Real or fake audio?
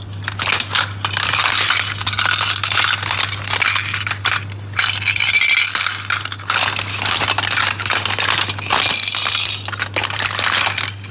real